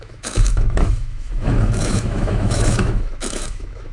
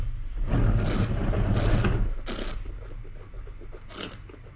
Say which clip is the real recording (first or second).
second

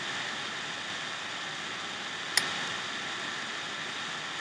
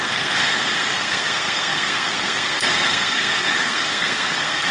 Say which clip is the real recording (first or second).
first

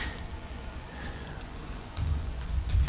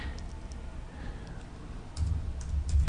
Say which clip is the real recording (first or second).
second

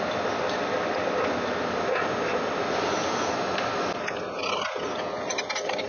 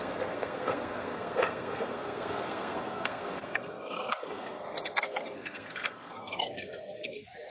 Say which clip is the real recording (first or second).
first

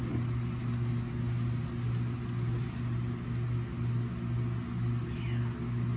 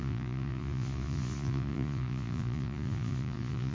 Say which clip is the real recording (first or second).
first